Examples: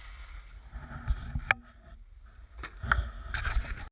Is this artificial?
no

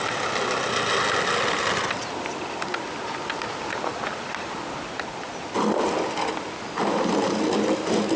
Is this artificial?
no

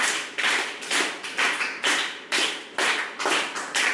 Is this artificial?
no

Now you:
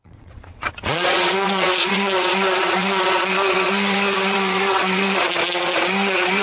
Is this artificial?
yes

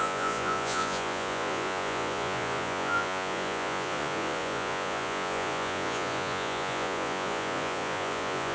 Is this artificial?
yes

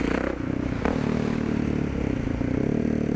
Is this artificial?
no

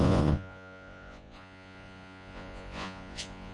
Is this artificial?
yes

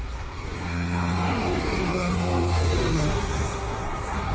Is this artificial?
yes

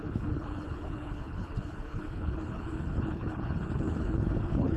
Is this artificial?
yes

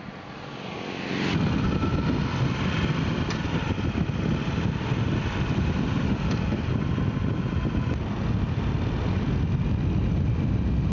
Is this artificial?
no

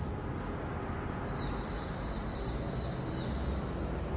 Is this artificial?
no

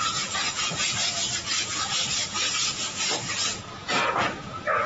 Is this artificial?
yes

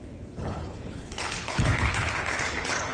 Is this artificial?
yes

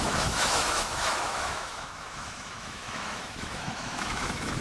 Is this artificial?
yes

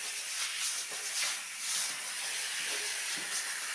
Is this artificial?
no